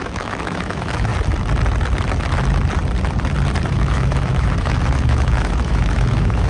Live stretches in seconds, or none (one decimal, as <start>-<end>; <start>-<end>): 1.1-3.7